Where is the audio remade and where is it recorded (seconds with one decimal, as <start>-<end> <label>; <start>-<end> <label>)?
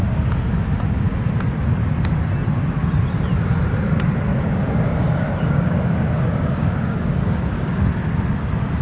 0.0-4.3 recorded; 4.3-7.9 remade; 7.9-8.8 recorded